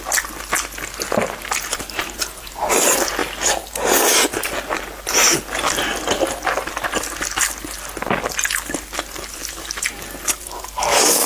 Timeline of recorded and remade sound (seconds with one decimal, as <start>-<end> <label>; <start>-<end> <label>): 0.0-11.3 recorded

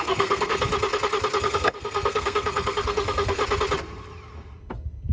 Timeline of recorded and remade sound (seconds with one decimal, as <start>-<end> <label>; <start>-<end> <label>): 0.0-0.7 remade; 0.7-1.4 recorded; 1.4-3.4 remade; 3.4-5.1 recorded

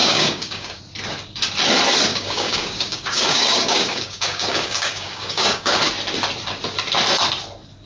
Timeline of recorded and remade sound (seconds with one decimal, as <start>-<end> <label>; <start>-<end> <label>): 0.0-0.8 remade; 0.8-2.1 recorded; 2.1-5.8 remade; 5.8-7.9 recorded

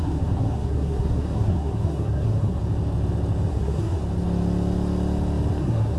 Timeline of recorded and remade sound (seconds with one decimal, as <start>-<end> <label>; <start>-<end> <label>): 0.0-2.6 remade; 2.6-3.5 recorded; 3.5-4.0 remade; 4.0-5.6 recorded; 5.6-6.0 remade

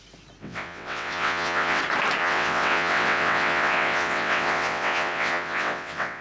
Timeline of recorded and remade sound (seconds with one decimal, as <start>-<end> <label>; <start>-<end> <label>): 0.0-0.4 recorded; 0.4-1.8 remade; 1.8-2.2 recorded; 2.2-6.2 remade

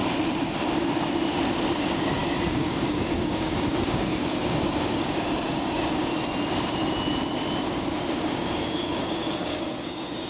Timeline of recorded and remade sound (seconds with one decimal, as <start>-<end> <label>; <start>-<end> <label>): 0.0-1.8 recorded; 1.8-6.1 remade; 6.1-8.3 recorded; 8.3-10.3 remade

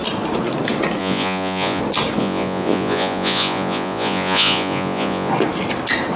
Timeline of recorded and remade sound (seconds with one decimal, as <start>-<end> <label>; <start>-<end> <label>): 0.0-1.0 recorded; 1.0-1.8 remade; 1.8-2.2 recorded; 2.2-5.3 remade; 5.3-6.2 recorded

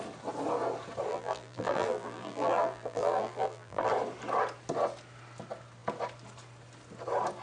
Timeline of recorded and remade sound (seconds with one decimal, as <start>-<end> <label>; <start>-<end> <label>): 0.0-1.1 recorded; 1.1-3.9 remade; 3.9-7.4 recorded